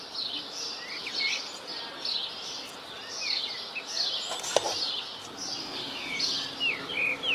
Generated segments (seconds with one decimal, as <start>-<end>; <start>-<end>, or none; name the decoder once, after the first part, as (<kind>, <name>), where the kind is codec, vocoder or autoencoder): 5.6-6.1 (autoencoder, DAC-VAE)